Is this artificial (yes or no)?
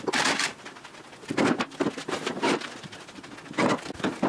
no